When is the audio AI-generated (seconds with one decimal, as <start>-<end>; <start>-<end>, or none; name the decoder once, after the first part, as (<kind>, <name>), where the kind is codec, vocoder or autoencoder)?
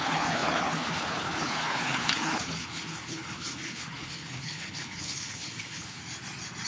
0.0-6.0 (codec, HILCodec)